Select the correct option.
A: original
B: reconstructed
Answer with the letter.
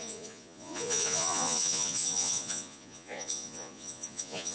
B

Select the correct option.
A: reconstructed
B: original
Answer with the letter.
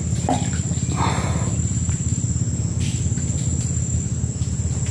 B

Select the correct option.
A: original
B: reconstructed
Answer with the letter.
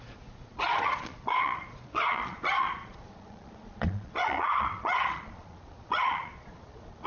B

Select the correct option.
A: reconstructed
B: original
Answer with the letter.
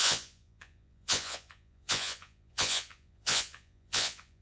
A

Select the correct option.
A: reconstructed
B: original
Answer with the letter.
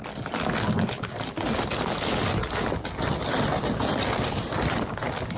B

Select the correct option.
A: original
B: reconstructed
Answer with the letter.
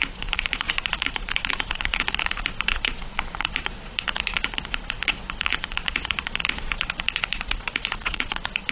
B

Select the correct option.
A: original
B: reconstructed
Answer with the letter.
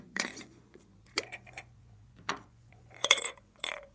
B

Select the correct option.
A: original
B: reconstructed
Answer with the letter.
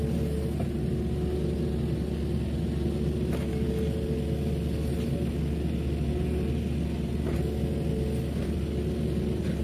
A